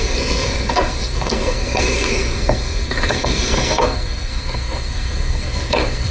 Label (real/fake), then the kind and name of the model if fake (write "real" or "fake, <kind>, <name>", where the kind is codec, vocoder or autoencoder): fake, codec, SNAC